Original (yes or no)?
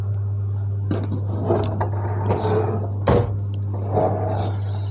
yes